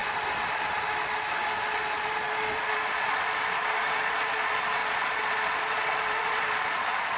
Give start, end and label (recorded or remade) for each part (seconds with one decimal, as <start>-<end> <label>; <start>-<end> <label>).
0.0-7.2 remade